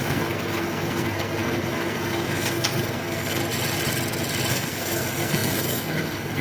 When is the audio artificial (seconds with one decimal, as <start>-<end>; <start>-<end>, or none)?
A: 0.0-3.4; 4.5-6.4